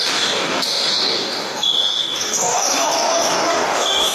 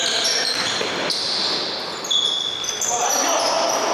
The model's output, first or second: first